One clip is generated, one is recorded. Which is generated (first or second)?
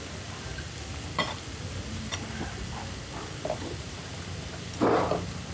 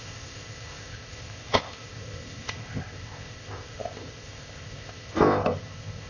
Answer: second